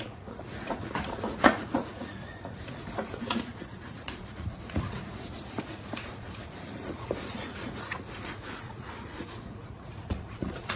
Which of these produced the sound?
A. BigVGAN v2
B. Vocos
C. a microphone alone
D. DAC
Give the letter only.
B